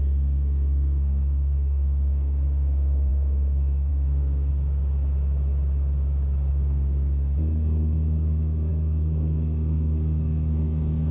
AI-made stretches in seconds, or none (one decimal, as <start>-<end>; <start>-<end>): 0.0-4.5; 6.5-11.1